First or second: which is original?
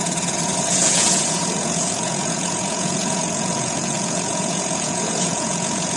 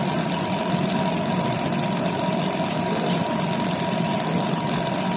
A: second